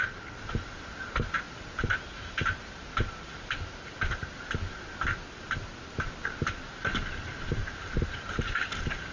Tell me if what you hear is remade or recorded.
recorded